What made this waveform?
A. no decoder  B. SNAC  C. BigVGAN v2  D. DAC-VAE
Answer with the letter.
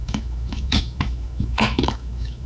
D